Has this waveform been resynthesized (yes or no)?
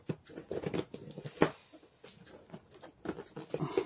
no